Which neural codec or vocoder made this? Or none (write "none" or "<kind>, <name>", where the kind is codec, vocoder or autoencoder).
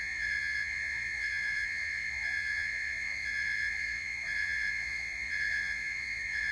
vocoder, Vocos